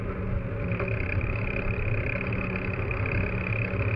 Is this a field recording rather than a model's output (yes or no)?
yes